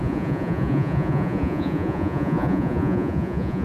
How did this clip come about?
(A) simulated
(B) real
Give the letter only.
A